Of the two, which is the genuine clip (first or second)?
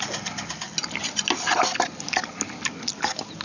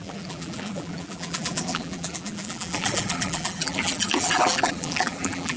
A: first